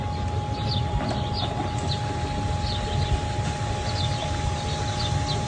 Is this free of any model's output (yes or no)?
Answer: yes